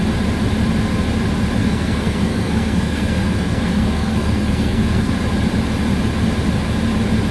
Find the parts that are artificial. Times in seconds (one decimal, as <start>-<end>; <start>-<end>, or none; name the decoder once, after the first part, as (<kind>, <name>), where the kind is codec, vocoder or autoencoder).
1.6-5.1 (codec, SNAC)